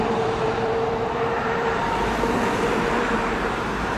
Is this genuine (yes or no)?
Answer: no